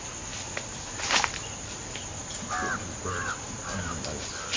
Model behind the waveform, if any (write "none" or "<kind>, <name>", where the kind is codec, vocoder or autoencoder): none